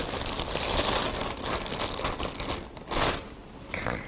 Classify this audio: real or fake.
real